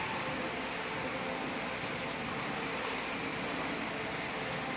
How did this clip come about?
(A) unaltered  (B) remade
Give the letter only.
A